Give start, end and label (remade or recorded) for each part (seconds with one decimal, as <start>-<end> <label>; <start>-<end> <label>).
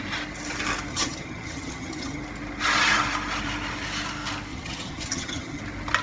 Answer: 0.0-0.9 recorded; 0.9-2.2 remade; 2.2-4.5 recorded; 4.5-5.6 remade; 5.6-6.0 recorded